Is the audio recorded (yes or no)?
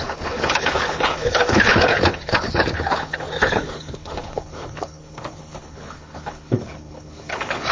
no